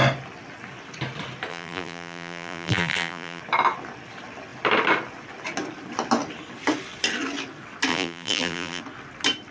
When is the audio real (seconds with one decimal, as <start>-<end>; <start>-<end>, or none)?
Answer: 0.0-1.5; 3.4-7.9; 8.8-9.5